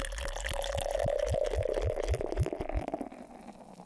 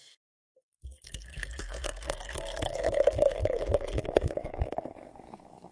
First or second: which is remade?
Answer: second